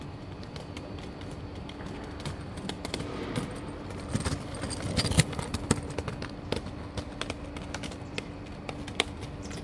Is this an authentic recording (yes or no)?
yes